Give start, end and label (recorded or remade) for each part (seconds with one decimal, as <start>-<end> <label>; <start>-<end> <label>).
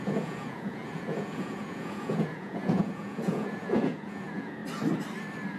0.0-4.6 remade; 4.6-5.6 recorded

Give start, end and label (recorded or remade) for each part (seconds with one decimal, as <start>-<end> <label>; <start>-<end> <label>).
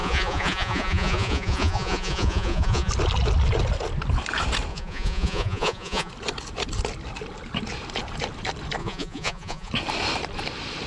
0.0-2.9 remade; 2.9-4.7 recorded; 4.7-6.1 remade; 6.1-8.8 recorded; 8.8-9.7 remade; 9.7-10.9 recorded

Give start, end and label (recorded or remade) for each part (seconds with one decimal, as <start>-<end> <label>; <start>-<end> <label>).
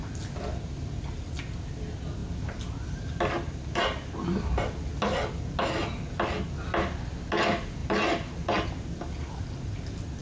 0.0-10.2 recorded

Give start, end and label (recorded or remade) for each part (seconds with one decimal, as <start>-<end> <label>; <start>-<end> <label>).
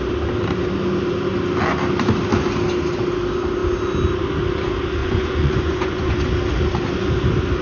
0.0-5.0 recorded; 5.0-6.3 remade; 6.3-7.6 recorded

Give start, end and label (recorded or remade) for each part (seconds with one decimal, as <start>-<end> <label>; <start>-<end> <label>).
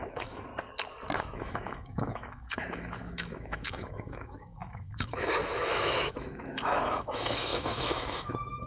0.0-0.5 remade; 0.5-1.2 recorded; 1.2-8.7 remade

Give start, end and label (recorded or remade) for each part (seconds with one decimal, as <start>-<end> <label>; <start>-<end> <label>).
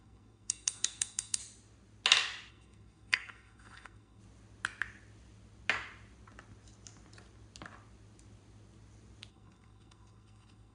0.0-1.4 remade; 1.4-2.5 recorded; 2.5-4.2 remade; 4.2-9.3 recorded; 9.3-10.7 remade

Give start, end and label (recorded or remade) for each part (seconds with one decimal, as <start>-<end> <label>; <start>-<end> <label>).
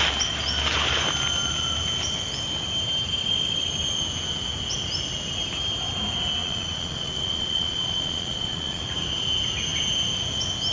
0.0-6.4 recorded; 6.4-8.8 remade; 8.8-10.7 recorded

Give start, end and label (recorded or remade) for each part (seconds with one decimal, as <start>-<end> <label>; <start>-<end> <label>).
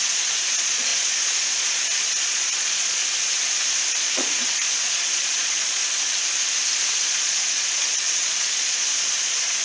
0.0-3.0 remade; 3.0-3.9 recorded; 3.9-5.8 remade; 5.8-6.9 recorded; 6.9-9.6 remade